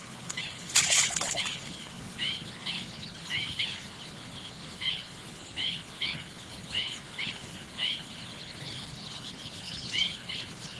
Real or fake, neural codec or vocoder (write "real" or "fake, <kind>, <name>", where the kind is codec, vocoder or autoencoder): fake, codec, HILCodec